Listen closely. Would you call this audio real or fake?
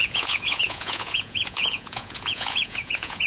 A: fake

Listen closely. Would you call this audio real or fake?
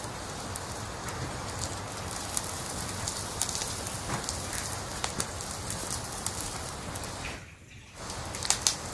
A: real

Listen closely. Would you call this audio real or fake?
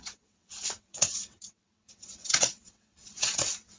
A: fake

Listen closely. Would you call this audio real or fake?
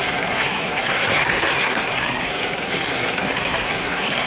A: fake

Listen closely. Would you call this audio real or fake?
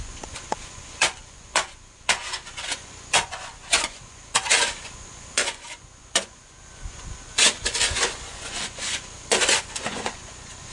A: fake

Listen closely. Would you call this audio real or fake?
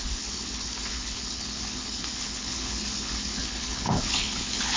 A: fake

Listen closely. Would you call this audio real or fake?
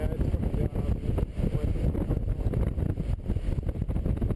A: real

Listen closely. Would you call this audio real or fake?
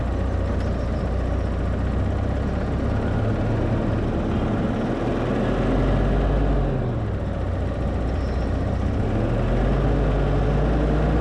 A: real